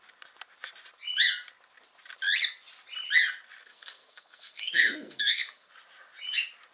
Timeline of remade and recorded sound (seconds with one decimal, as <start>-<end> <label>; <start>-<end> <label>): 0.0-3.6 recorded; 3.6-5.7 remade; 5.7-6.7 recorded